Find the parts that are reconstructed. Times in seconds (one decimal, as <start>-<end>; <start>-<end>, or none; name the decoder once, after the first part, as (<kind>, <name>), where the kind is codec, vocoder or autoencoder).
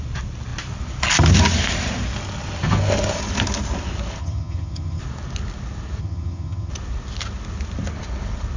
4.2-5.0 (vocoder, HiFi-GAN); 6.0-6.7